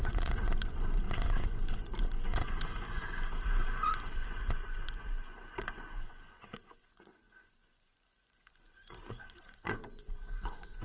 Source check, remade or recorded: remade